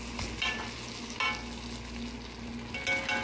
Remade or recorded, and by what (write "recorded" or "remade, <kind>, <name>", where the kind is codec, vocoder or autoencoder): recorded